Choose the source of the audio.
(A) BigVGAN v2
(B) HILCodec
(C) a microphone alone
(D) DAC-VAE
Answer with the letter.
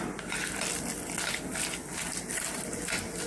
C